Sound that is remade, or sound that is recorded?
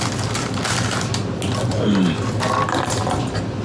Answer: recorded